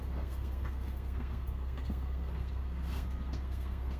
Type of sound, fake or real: fake